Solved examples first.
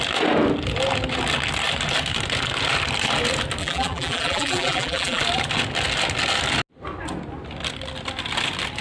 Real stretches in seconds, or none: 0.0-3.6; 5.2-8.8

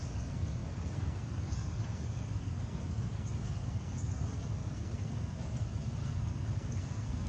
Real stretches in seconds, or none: none

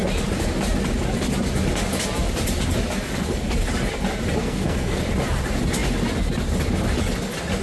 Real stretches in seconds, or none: 0.0-4.4; 5.0-7.6

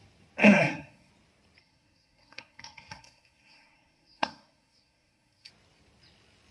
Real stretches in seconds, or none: 0.0-0.4; 1.1-1.6; 5.5-6.5

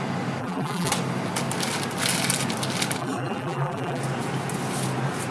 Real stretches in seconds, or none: 0.0-0.4; 0.9-3.0; 4.0-5.3

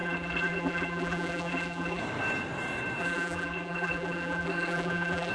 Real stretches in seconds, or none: 2.0-3.0

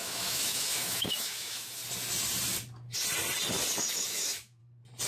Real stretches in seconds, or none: 1.8-3.8; 4.6-5.1

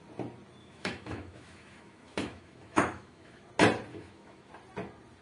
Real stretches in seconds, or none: 0.0-0.6; 3.5-3.9; 4.5-5.2